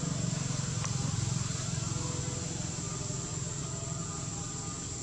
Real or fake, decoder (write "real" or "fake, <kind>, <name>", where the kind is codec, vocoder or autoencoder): real